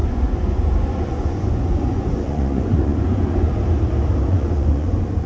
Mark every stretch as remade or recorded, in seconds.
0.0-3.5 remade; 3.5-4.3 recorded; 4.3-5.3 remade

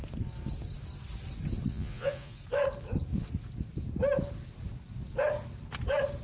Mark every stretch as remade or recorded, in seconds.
0.0-1.7 recorded; 1.7-2.4 remade; 2.4-6.2 recorded

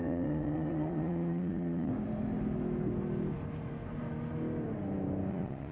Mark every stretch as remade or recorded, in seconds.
0.0-1.9 remade; 1.9-5.3 recorded; 5.3-5.7 remade

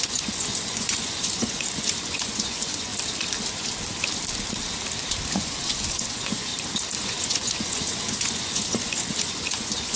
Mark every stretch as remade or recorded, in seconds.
0.0-2.9 remade; 2.9-5.3 recorded; 5.3-6.5 remade; 6.5-7.0 recorded; 7.0-10.0 remade

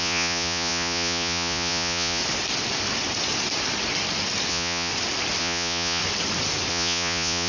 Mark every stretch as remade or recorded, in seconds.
0.0-2.2 remade; 2.2-4.5 recorded; 4.5-4.9 remade; 4.9-5.4 recorded; 5.4-6.0 remade; 6.0-6.7 recorded; 6.7-7.5 remade